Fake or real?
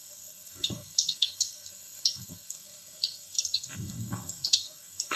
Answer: fake